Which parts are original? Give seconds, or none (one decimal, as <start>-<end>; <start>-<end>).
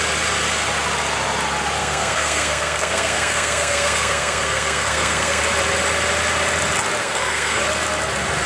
0.0-1.8; 5.4-7.0; 7.6-8.5